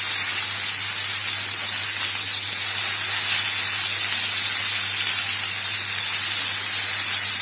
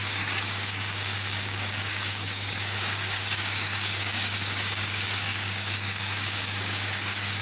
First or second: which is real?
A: first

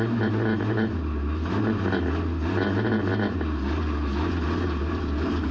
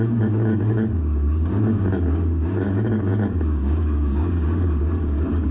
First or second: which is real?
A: first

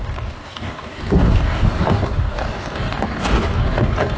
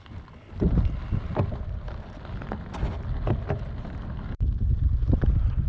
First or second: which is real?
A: second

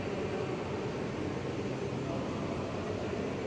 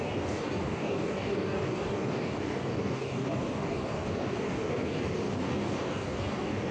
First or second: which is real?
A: first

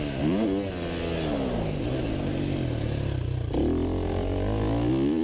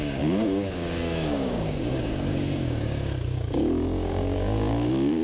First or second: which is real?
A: first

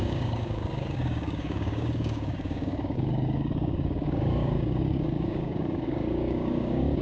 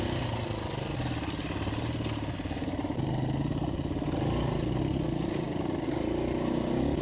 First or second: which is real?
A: second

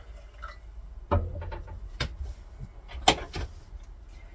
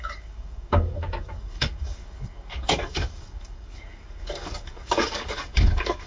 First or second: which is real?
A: first